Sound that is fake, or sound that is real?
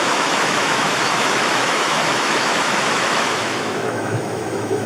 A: fake